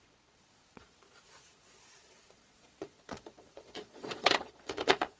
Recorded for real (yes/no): no